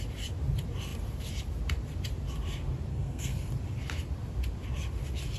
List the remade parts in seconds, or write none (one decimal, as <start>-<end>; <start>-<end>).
2.9-3.5